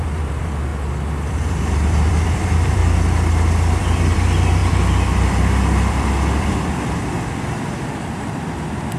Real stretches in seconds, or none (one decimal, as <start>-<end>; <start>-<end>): 0.7-1.3; 2.8-3.8